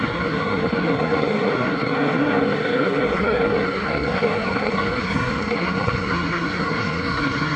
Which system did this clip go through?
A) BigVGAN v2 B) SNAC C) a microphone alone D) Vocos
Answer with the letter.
B